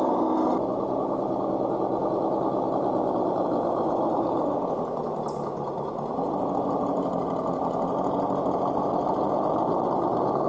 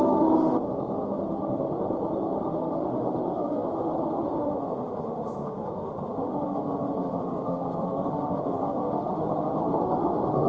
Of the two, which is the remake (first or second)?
second